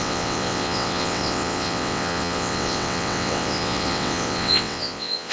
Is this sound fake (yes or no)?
yes